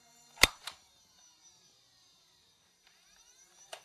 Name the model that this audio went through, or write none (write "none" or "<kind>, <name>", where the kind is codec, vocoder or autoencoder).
vocoder, BigVGAN v2